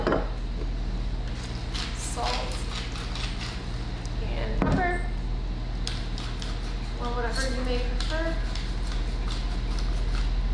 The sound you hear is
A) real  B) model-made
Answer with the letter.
A